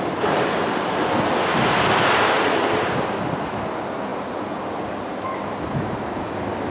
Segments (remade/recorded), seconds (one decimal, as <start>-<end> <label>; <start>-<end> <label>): 0.0-6.7 recorded